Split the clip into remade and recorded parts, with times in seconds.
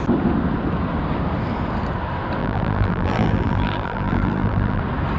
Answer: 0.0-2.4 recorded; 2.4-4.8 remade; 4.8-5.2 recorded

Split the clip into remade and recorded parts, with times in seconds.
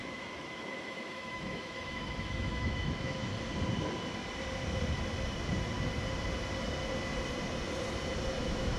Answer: 0.0-3.3 remade; 3.3-8.4 recorded; 8.4-8.8 remade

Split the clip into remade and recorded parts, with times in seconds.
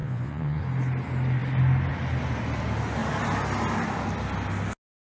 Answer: 0.0-0.6 remade; 0.6-5.0 recorded